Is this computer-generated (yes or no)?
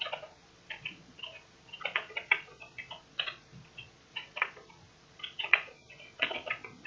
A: yes